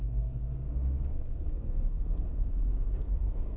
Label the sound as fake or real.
fake